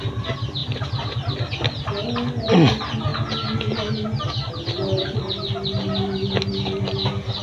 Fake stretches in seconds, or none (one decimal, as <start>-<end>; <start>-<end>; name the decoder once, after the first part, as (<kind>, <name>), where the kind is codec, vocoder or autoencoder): none